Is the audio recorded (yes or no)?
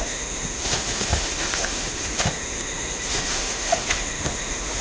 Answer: no